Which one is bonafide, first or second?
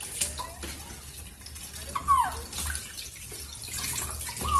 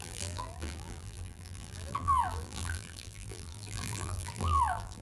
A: first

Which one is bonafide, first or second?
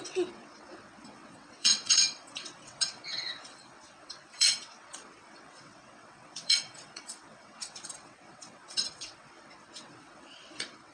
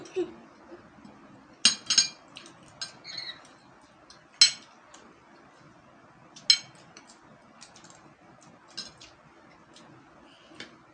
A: second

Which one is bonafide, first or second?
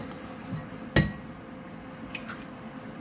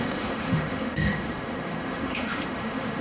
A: first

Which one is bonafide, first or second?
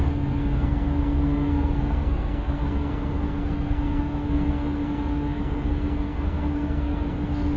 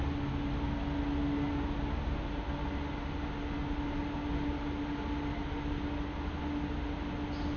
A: second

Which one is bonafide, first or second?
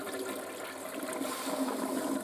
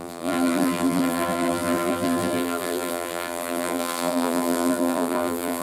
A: first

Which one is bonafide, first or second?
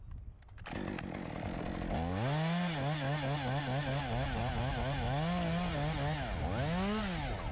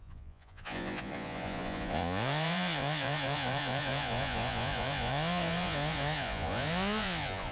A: first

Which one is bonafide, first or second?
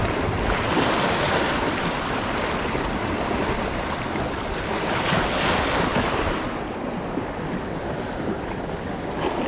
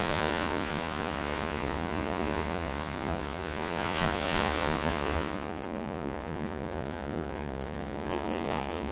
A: first